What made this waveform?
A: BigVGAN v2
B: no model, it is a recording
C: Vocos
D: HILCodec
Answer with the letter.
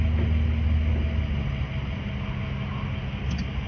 B